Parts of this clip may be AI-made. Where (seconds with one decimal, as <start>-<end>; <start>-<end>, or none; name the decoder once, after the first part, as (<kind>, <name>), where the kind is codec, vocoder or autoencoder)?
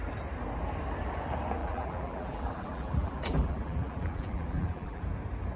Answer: 1.6-5.0 (vocoder, BigVGAN v2)